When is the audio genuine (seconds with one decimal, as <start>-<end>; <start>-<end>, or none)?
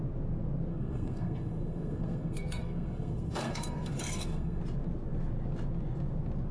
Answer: 0.0-0.7; 4.6-6.5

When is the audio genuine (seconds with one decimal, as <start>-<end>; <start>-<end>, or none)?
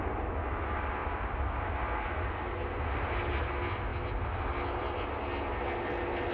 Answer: 0.0-6.3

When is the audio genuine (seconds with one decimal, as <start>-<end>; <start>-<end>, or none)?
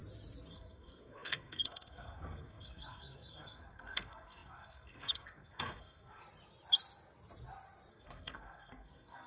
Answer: 0.0-0.5; 6.2-7.9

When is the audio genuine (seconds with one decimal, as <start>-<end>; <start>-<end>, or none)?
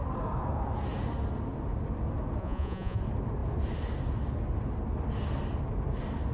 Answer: 0.0-2.4; 3.0-6.3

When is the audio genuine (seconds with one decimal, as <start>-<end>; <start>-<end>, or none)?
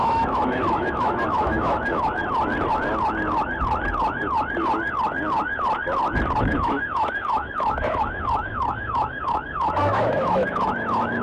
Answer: 2.2-6.4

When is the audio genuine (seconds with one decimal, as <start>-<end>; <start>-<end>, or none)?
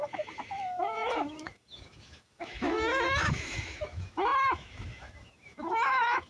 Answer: none